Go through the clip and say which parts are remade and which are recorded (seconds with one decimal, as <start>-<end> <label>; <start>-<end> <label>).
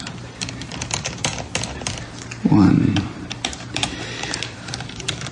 0.0-1.3 remade; 1.3-2.7 recorded; 2.7-5.3 remade